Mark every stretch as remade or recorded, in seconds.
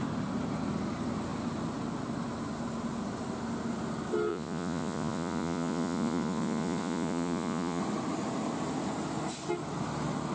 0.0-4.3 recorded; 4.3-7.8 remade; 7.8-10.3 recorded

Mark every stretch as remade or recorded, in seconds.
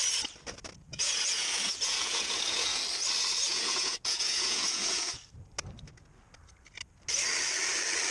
0.0-0.9 recorded; 0.9-2.8 remade; 2.8-3.5 recorded; 3.5-5.2 remade; 5.2-8.1 recorded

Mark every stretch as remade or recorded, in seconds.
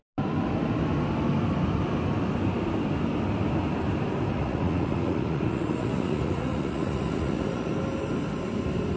0.0-4.3 recorded; 4.3-7.7 remade; 7.7-9.0 recorded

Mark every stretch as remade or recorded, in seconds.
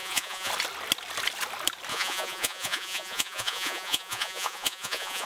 0.0-0.5 remade; 0.5-1.9 recorded; 1.9-5.3 remade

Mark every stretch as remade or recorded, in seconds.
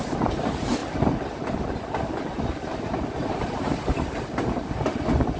0.0-5.4 recorded